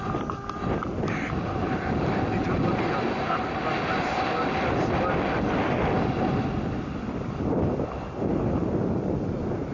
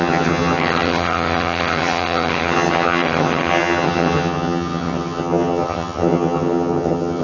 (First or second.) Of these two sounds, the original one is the first